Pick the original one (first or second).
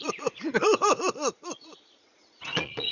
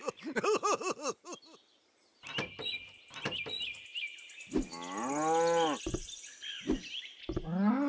second